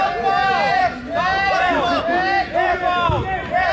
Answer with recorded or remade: recorded